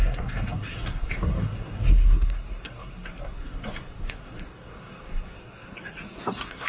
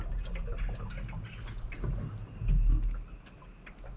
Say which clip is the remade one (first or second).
first